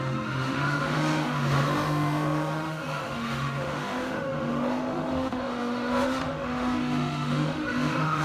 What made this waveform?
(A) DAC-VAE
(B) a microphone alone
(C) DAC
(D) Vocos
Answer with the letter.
A